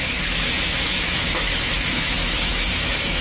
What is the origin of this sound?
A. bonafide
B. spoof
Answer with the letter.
B